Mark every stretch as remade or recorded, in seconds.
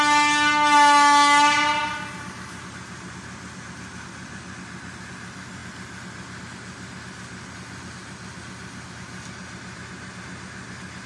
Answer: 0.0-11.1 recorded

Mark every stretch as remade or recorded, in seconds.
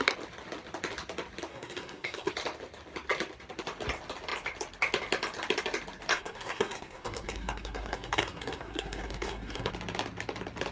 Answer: 0.0-1.5 recorded; 1.5-2.3 remade; 2.3-6.1 recorded; 6.1-9.7 remade; 9.7-10.7 recorded